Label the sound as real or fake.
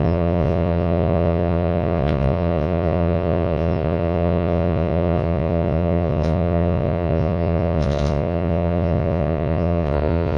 fake